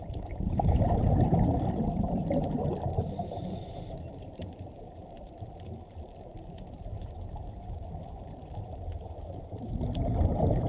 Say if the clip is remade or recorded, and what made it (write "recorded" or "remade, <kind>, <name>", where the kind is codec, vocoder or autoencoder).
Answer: remade, vocoder, BigVGAN v2